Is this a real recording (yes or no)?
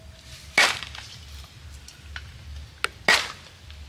yes